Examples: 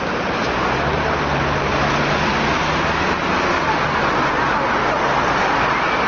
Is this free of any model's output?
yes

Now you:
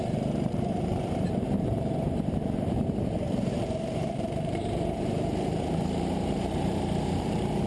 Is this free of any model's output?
no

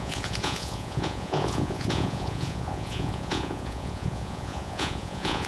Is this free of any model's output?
no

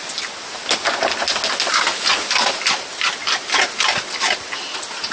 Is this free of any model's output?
yes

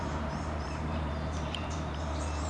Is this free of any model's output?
no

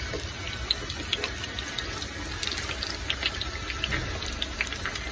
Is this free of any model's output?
yes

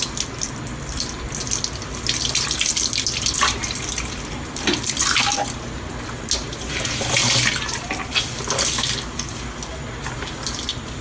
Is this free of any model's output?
yes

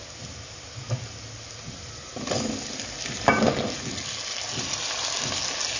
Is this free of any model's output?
yes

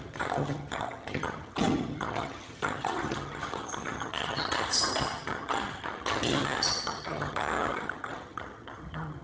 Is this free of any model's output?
no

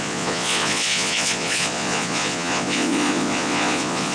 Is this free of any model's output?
no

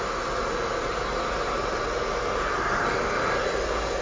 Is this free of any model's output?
yes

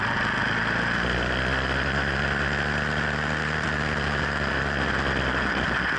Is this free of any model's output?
yes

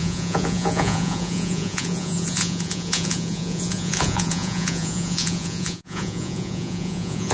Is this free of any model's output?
no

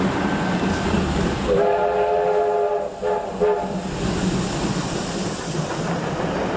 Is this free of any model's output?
yes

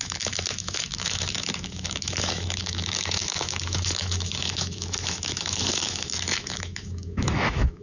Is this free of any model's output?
no